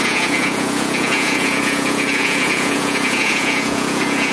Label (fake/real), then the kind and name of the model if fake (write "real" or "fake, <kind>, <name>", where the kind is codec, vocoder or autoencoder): fake, vocoder, Vocos